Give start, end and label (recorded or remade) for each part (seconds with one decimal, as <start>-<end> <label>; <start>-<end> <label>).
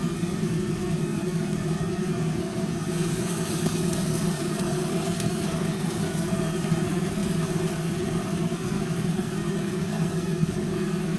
0.0-11.2 remade